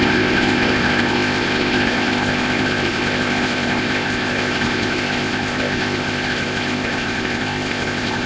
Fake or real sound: fake